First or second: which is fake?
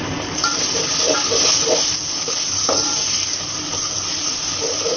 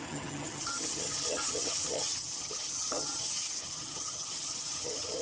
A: second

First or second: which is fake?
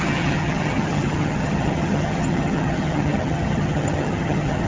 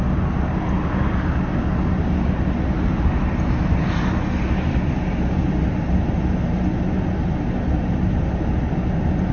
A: first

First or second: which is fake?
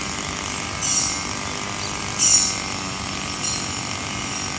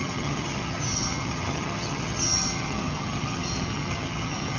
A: second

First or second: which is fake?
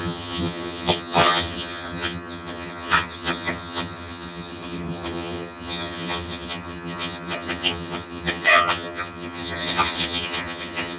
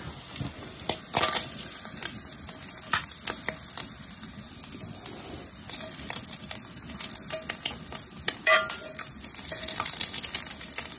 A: first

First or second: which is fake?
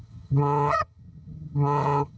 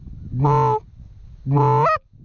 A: first